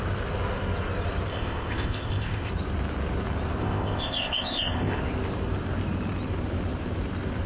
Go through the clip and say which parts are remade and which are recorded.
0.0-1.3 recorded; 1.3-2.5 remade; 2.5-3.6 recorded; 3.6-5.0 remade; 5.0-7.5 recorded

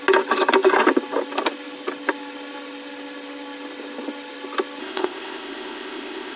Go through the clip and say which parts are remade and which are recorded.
0.0-4.8 recorded; 4.8-6.4 remade

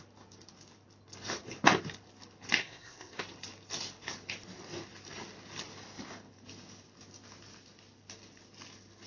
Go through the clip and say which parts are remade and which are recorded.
0.0-2.6 recorded; 2.6-3.2 remade; 3.2-9.1 recorded

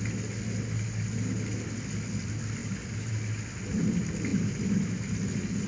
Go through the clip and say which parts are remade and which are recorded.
0.0-5.7 recorded